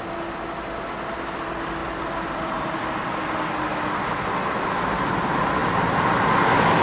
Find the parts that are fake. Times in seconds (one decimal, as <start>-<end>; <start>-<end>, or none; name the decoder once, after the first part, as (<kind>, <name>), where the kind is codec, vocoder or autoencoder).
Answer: 5.6-6.2 (vocoder, BigVGAN v2)